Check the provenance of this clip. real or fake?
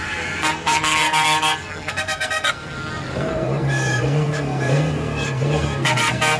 fake